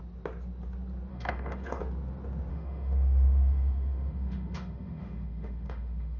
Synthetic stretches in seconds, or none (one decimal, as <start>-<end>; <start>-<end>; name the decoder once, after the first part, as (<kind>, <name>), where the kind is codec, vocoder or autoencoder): 1.1-1.8 (autoencoder, DAC-VAE); 2.5-6.2